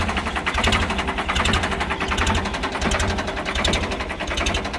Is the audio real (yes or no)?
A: yes